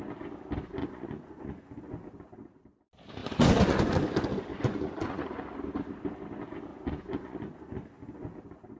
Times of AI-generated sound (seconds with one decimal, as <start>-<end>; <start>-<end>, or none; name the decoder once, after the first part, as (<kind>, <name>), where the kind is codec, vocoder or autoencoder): 0.8-1.7 (vocoder, Vocos); 3.2-3.9; 4.5-5.4; 6.7-7.7